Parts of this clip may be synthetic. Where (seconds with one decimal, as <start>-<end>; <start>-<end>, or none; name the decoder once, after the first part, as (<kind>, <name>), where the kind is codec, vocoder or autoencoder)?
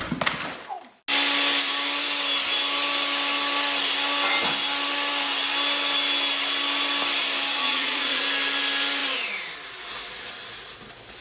7.6-8.2 (vocoder, Vocos)